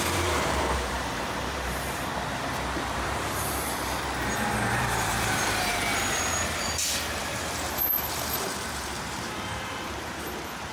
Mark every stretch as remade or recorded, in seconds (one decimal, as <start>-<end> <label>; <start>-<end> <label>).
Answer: 0.0-2.1 remade; 2.1-4.8 recorded; 4.8-10.7 remade